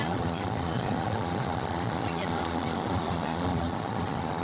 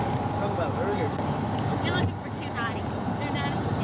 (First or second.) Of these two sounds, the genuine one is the second